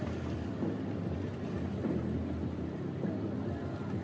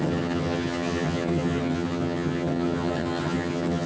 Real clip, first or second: first